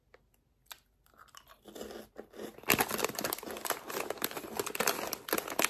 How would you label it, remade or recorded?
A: recorded